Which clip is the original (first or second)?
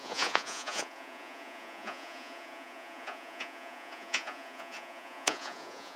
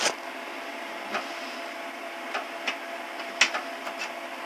second